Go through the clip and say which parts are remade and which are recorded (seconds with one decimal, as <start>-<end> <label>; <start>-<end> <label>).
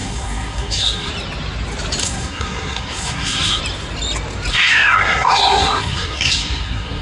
0.0-1.1 remade; 1.1-2.0 recorded; 2.0-3.6 remade; 3.6-4.5 recorded; 4.5-7.0 remade